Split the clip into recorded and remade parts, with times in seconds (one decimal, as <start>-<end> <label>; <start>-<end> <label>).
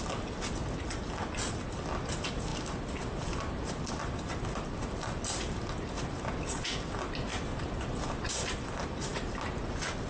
0.0-10.1 recorded